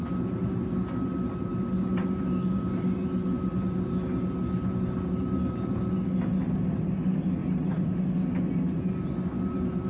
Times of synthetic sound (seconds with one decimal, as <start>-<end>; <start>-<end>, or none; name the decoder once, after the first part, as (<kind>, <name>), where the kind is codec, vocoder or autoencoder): none